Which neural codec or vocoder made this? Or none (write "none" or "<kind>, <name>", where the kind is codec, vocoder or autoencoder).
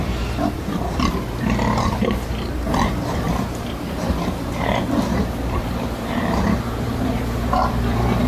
vocoder, BigVGAN v2